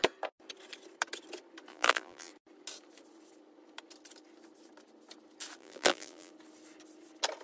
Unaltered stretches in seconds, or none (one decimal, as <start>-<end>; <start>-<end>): 0.0-1.7; 2.3-5.6; 6.3-7.4